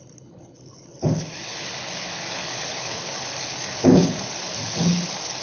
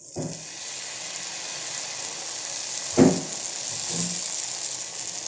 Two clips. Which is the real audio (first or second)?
second